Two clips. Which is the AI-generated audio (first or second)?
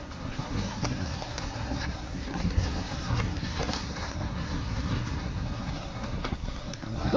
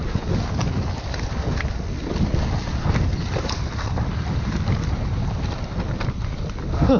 first